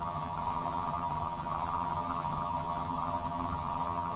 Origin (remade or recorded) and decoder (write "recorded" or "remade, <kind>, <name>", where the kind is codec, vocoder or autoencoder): remade, vocoder, HiFi-GAN